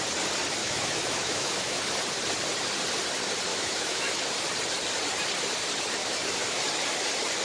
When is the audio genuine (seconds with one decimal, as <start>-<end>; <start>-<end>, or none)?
0.0-0.6; 1.8-3.5; 4.2-6.0; 6.6-7.4